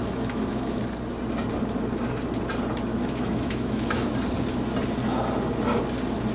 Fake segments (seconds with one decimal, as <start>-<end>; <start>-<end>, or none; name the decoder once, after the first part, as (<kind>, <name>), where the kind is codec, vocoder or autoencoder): 0.0-0.8 (autoencoder, DAC-VAE); 2.9-4.1